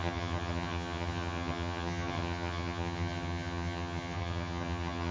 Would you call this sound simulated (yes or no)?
yes